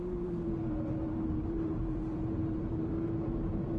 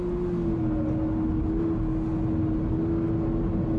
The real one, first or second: second